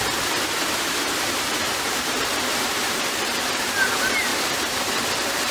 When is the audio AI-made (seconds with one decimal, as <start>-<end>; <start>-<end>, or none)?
0.6-3.9; 4.3-5.5